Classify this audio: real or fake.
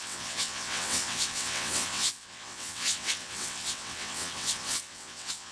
fake